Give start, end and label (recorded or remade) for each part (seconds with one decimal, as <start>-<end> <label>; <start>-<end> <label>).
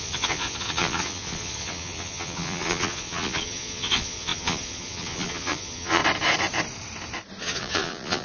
0.0-6.0 remade; 6.0-7.4 recorded; 7.4-8.2 remade